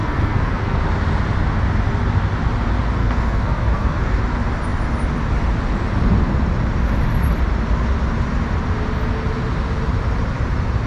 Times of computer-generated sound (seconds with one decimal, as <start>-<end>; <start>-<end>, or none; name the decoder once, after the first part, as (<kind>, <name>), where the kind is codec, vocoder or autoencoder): 0.0-0.8 (codec, SNAC); 3.0-4.2